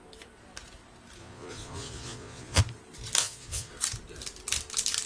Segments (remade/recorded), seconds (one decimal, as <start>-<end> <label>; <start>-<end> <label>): 0.0-1.2 recorded; 1.2-2.6 remade; 2.6-3.2 recorded; 3.2-3.7 remade; 3.7-5.1 recorded